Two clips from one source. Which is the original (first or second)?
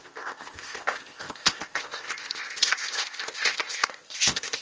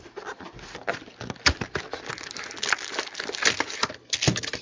second